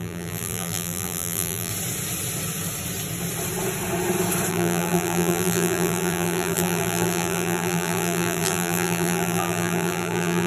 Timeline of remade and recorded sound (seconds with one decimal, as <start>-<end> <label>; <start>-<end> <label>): 0.0-1.7 remade; 1.7-4.5 recorded; 4.5-10.5 remade